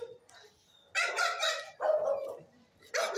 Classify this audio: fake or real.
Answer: real